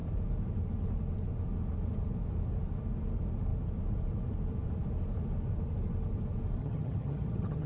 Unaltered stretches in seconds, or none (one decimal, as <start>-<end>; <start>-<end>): 0.0-6.6